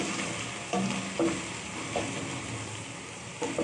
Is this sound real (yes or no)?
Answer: yes